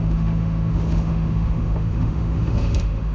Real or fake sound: fake